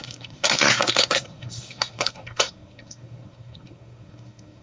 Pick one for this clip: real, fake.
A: fake